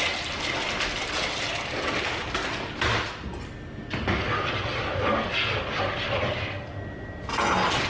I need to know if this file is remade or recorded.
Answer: recorded